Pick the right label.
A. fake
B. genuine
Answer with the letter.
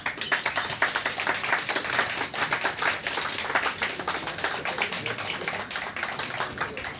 A